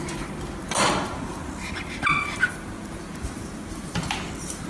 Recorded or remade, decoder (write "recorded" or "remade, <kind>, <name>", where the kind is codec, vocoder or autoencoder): recorded